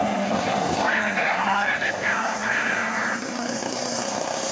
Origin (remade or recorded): remade